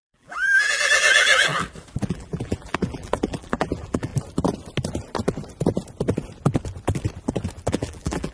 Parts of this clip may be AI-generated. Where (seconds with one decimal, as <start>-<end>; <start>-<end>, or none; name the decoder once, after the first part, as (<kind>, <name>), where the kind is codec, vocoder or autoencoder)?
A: 0.0-1.5 (vocoder, BigVGAN v2); 2.1-4.1; 7.7-8.3